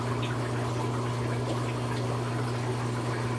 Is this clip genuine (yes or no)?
yes